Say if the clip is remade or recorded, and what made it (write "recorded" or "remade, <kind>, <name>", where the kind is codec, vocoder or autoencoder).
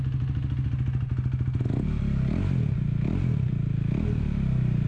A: recorded